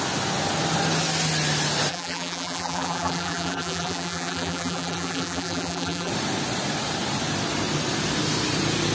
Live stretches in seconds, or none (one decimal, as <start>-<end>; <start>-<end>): 0.0-1.9; 6.1-8.9